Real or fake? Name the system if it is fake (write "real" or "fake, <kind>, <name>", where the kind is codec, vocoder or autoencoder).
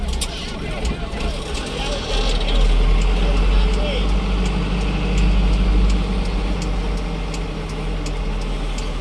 real